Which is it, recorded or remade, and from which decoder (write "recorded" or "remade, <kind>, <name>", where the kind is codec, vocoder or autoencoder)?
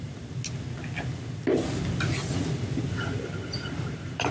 recorded